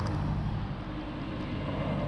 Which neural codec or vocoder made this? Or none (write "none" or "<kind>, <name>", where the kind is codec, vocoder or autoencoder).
none